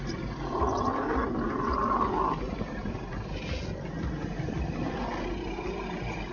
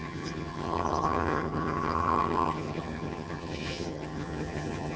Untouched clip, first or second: first